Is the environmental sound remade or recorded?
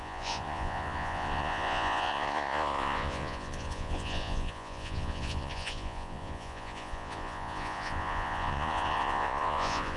remade